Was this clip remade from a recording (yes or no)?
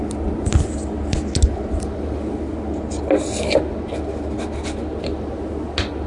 no